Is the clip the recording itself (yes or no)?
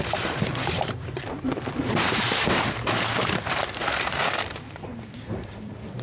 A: no